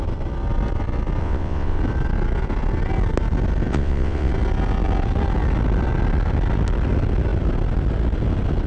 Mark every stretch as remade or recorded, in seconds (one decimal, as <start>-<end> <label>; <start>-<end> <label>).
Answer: 0.0-1.2 recorded; 1.2-1.8 remade; 1.8-3.7 recorded; 3.7-4.3 remade; 4.3-8.7 recorded